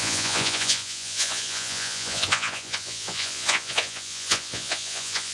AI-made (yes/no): yes